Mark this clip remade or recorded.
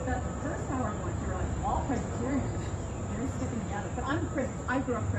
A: remade